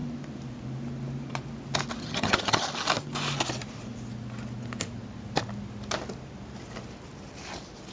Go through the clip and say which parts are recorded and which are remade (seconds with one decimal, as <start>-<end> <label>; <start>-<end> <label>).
0.0-2.0 recorded; 2.0-2.7 remade; 2.7-7.9 recorded